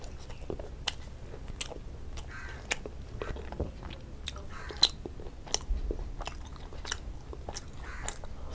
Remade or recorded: recorded